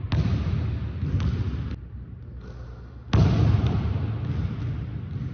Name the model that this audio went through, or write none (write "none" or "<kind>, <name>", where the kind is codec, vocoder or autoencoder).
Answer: none